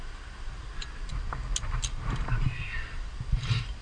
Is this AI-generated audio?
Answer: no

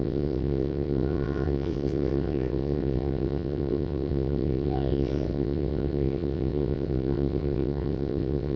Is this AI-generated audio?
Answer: yes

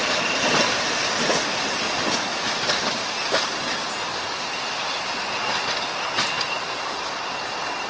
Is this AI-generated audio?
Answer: no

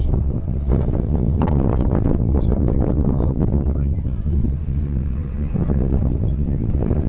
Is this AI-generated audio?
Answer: yes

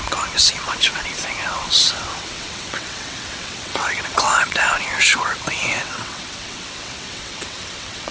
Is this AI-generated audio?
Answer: yes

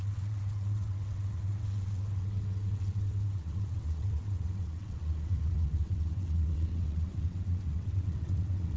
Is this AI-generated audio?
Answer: yes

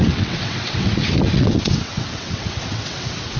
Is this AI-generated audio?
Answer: yes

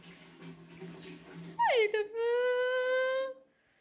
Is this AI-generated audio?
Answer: no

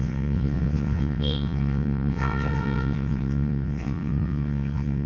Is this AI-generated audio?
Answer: yes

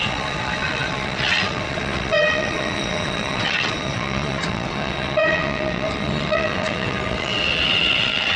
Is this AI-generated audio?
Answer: yes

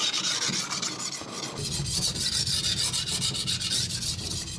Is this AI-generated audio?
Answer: no